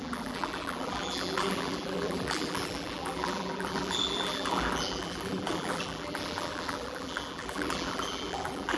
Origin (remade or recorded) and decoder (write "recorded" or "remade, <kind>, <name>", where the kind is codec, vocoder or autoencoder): remade, vocoder, BigVGAN v2